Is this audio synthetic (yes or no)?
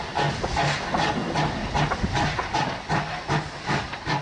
no